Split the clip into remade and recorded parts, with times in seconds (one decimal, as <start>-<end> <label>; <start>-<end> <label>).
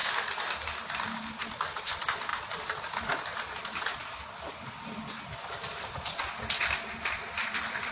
0.0-7.9 recorded